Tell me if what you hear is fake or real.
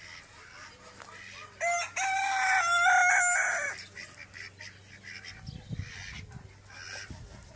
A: real